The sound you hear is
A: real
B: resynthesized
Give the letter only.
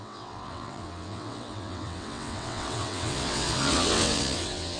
B